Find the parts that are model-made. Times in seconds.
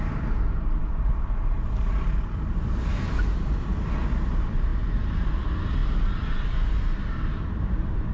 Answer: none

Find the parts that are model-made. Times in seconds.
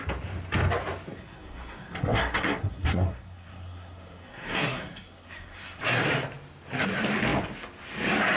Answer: 1.1-5.8 (codec, SNAC)